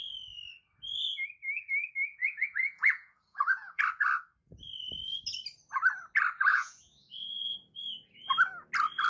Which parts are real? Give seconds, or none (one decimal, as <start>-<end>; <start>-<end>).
0.0-2.1; 3.8-6.5; 8.3-9.1